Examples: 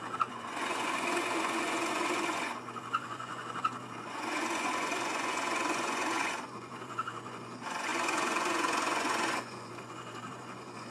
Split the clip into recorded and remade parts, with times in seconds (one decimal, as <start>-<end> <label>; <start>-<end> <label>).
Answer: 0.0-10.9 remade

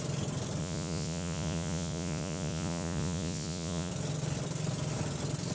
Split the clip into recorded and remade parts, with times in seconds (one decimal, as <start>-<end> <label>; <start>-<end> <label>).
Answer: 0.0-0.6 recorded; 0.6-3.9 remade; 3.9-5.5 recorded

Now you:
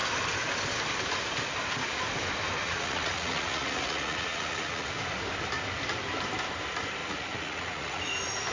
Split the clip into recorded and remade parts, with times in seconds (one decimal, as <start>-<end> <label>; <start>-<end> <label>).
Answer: 0.0-2.6 recorded; 2.6-4.9 remade; 4.9-7.0 recorded; 7.0-8.0 remade; 8.0-8.5 recorded

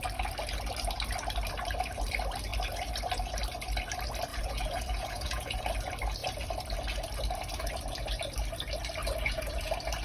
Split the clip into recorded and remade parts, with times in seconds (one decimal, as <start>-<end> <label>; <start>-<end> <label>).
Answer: 0.0-4.3 recorded; 4.3-5.6 remade; 5.6-9.0 recorded; 9.0-9.6 remade; 9.6-10.0 recorded

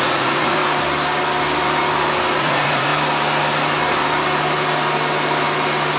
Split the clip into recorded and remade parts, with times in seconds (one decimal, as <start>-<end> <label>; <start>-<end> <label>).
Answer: 0.0-0.6 remade; 0.6-2.4 recorded; 2.4-2.9 remade; 2.9-6.0 recorded